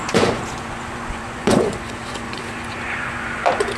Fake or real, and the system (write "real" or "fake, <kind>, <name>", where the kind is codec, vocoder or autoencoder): fake, vocoder, Vocos